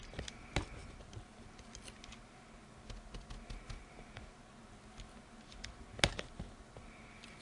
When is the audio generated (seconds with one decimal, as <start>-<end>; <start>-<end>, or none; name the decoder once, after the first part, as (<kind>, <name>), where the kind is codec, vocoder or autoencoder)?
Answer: none